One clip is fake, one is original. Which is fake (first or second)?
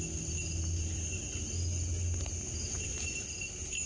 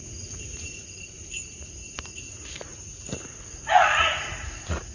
second